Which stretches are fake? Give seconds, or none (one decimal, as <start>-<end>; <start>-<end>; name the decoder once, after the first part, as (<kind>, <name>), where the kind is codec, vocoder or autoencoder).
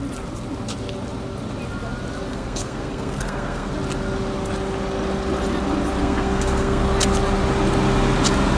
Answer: 2.3-3.7 (codec, SNAC); 6.0-6.8